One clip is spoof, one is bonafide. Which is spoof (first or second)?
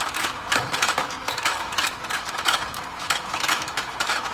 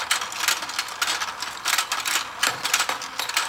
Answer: first